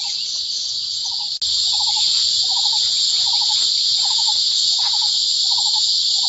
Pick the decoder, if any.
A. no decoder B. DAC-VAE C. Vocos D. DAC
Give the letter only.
A